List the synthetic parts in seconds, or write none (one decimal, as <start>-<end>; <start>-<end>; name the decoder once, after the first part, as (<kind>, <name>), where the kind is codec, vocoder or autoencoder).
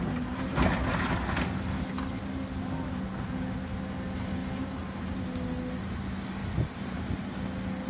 6.4-7.4 (vocoder, BigVGAN v2)